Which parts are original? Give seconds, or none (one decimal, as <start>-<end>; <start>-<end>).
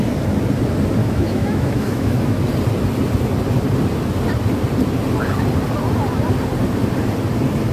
0.0-1.0; 2.4-7.7